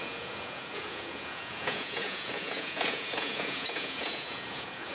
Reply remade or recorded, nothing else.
remade